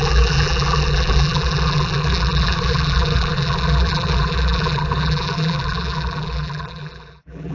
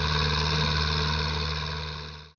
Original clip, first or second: second